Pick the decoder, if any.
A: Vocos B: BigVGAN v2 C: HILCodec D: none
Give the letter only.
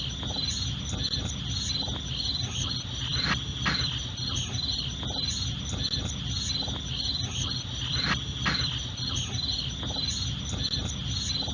D